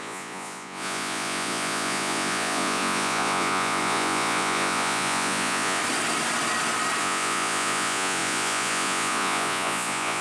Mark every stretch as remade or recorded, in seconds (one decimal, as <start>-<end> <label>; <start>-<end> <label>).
0.0-5.8 remade; 5.8-7.0 recorded; 7.0-10.2 remade

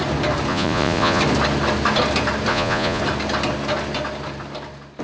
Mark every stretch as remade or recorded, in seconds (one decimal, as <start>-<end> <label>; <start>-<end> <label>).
0.0-0.5 recorded; 0.5-1.2 remade; 1.2-2.5 recorded; 2.5-3.0 remade; 3.0-5.0 recorded

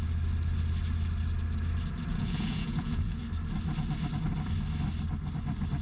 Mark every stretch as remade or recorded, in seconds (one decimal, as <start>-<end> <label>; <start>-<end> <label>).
0.0-2.1 recorded; 2.1-3.2 remade; 3.2-5.8 recorded

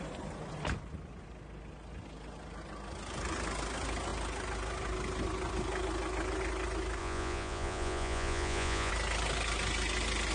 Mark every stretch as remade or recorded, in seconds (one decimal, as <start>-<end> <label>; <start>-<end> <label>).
0.0-7.0 recorded; 7.0-8.9 remade; 8.9-10.3 recorded